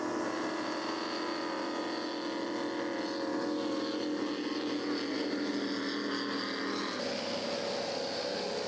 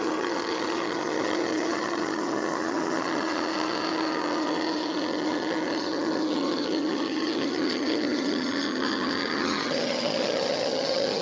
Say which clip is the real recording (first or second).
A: first